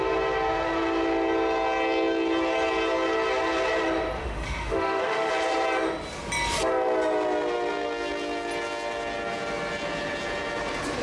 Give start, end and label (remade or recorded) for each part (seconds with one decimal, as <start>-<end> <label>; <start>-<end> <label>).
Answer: 0.0-4.2 recorded; 4.2-5.3 remade; 5.3-11.0 recorded